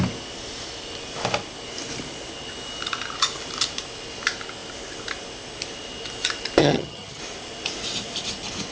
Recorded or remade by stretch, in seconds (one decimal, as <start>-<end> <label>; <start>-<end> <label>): 0.0-6.6 recorded; 6.6-7.2 remade; 7.2-8.7 recorded